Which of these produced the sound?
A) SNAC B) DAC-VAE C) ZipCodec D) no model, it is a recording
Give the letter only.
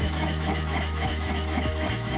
B